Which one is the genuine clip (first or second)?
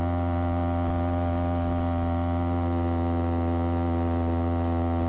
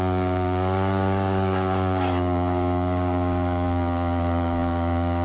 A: first